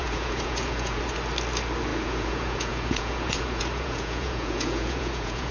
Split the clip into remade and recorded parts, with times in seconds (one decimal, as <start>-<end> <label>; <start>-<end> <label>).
0.0-1.0 remade; 1.0-1.9 recorded; 1.9-5.5 remade